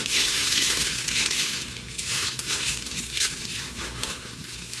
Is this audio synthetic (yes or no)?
yes